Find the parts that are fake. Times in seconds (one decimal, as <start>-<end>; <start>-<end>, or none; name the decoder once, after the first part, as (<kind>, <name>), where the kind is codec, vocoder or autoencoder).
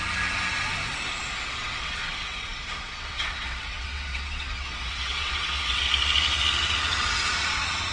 1.6-5.8 (vocoder, WaveNeXt)